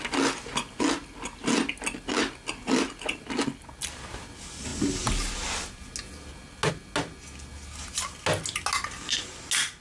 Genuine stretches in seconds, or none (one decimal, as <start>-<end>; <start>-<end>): 0.0-9.8